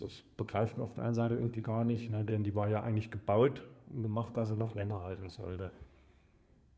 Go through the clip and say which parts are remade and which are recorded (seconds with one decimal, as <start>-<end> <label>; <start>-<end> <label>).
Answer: 0.0-2.3 remade; 2.3-3.6 recorded; 3.6-6.8 remade